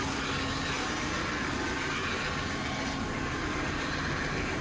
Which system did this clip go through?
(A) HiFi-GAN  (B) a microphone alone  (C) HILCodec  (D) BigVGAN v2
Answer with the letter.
B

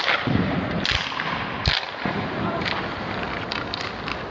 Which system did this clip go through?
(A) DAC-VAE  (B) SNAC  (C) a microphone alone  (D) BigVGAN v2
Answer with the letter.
C